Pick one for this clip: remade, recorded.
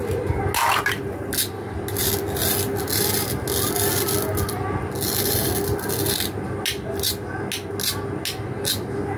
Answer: recorded